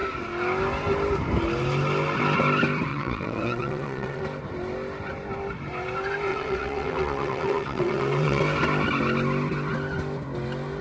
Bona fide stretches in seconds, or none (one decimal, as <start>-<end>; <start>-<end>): 0.0-2.9; 4.2-6.3; 8.4-10.8